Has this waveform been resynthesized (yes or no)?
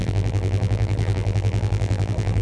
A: yes